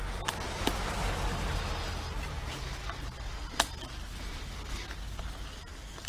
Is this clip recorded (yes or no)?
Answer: yes